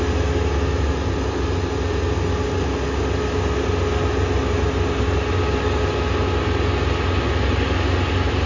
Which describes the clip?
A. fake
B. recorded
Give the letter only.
B